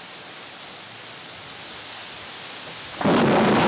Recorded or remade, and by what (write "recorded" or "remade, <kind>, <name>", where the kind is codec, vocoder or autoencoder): recorded